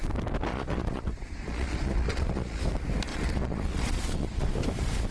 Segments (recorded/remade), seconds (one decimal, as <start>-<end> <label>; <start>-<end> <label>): 0.0-0.5 recorded; 0.5-2.6 remade; 2.6-3.1 recorded; 3.1-4.5 remade; 4.5-5.1 recorded